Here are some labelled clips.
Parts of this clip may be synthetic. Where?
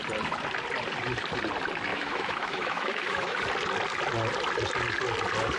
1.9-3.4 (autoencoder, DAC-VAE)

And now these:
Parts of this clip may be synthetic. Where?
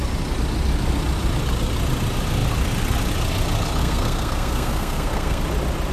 3.8-5.4 (codec, SNAC)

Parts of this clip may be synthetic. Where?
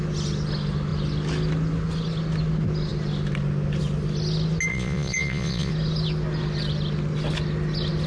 4.7-5.7 (vocoder, Vocos)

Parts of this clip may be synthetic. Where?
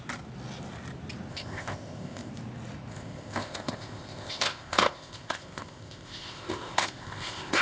1.3-2.3 (codec, ZipCodec); 2.9-7.6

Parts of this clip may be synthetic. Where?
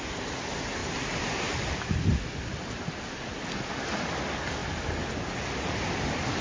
none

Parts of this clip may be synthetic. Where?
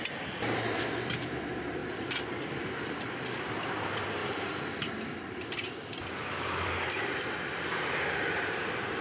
0.0-9.0 (vocoder, BigVGAN v2)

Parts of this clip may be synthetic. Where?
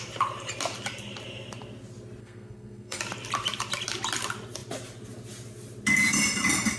2.2-3.0 (codec, SNAC)